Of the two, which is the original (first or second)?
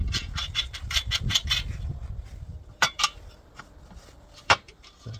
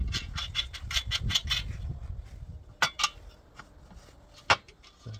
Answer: second